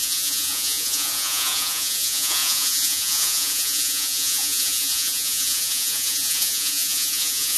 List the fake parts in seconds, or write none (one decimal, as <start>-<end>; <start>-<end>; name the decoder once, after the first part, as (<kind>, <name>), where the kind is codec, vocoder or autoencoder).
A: 0.0-7.6 (vocoder, Vocos)